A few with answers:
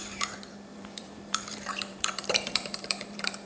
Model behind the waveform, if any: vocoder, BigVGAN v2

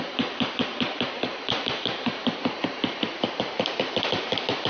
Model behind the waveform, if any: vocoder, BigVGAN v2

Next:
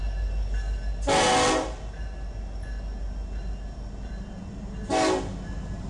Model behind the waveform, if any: none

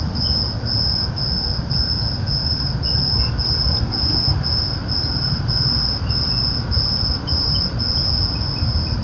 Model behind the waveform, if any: none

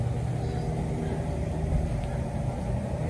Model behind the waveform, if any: none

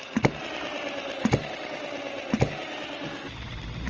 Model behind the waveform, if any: none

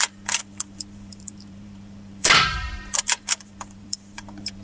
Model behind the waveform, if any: vocoder, BigVGAN v2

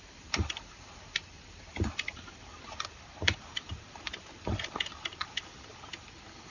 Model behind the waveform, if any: vocoder, BigVGAN v2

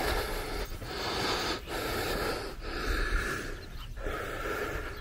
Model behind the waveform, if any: none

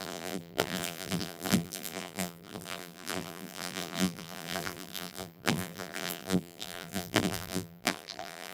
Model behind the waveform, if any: vocoder, BigVGAN v2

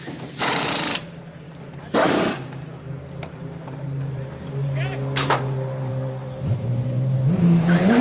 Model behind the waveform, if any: vocoder, BigVGAN v2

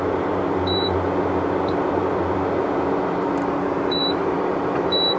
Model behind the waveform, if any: vocoder, BigVGAN v2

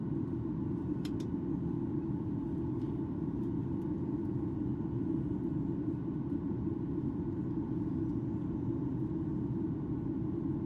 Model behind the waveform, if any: none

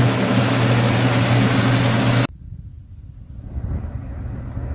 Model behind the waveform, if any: none